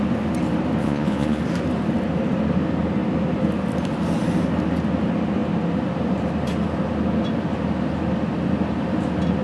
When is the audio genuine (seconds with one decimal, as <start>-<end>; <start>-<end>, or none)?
0.0-0.8; 1.4-9.4